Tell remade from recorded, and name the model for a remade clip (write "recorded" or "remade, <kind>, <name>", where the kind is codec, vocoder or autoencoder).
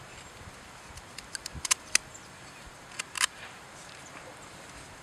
recorded